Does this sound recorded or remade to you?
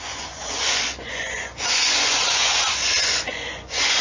remade